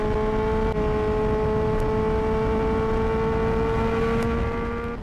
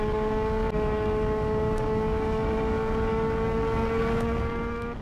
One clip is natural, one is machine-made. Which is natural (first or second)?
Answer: first